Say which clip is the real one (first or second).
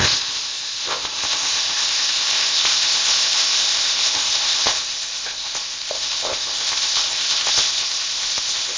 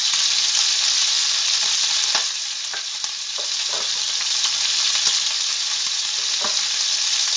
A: second